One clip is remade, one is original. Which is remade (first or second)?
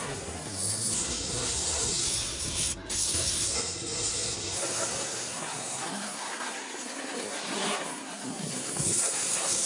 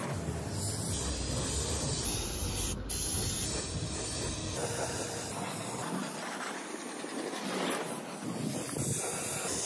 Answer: first